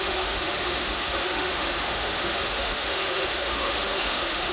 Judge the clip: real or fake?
fake